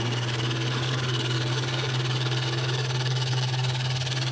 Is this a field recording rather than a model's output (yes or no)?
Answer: no